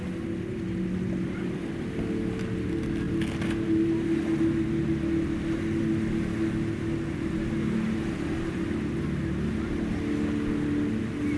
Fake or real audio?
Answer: real